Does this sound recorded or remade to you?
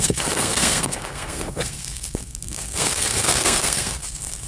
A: remade